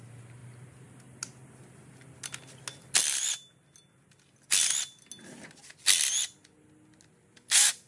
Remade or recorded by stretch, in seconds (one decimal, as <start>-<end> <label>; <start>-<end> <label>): 0.0-7.9 recorded